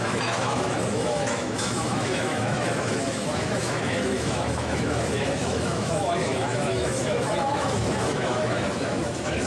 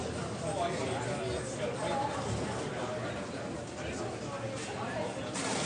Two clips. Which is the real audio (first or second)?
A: second